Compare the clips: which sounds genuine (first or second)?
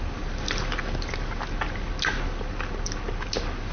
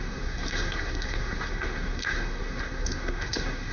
first